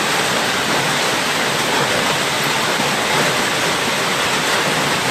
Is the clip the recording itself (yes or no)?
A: yes